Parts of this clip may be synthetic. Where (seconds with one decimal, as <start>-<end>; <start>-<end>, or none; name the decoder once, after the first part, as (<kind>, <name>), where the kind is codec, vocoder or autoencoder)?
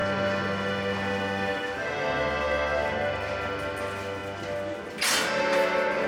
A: none